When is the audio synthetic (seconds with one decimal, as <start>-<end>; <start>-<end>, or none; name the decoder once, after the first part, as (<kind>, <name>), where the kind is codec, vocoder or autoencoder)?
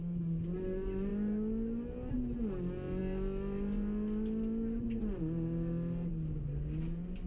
none